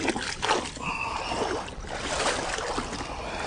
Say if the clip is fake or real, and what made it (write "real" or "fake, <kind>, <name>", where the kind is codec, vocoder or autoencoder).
real